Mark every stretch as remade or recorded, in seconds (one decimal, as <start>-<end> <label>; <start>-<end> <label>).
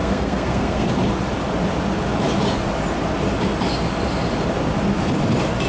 0.0-0.9 remade; 0.9-5.7 recorded